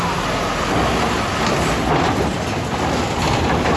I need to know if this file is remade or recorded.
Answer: recorded